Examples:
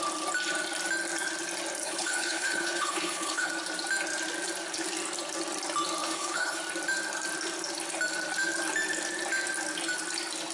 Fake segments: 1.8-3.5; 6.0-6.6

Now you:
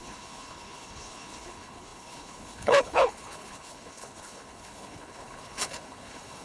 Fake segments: 0.0-6.4

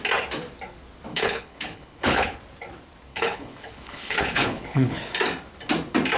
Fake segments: 1.1-2.4; 3.1-5.1

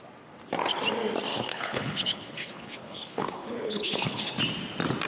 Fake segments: 1.3-4.4

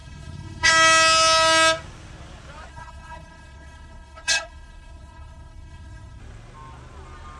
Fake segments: 0.0-0.7; 2.7-6.2

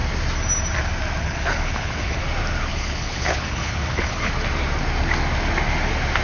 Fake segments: 1.2-2.2; 2.7-4.3

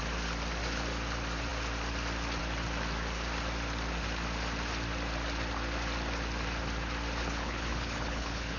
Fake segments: 7.2-8.6